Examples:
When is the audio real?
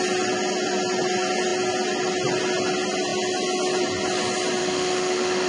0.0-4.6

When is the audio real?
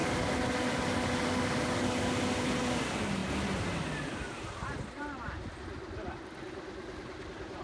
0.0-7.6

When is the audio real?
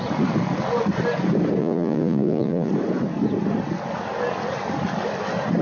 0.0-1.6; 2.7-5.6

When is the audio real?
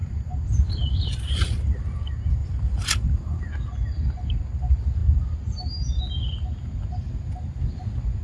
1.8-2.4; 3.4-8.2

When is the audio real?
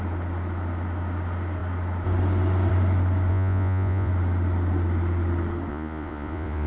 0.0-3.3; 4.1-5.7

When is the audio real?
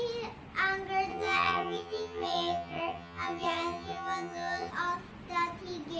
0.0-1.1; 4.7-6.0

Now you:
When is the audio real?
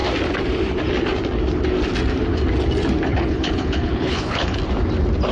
0.0-3.1; 4.6-5.3